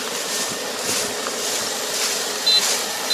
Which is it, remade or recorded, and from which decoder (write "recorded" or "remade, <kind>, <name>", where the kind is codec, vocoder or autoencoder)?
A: remade, vocoder, BigVGAN v2